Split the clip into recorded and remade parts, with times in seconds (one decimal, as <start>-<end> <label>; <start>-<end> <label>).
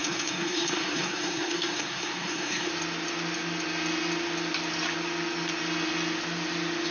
0.0-2.7 remade; 2.7-6.9 recorded